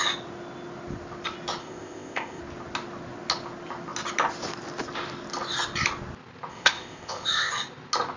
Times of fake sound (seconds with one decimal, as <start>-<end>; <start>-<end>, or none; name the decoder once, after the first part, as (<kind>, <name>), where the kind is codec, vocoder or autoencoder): 1.6-2.4 (codec, ZipCodec); 6.5-7.5